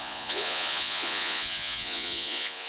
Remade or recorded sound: remade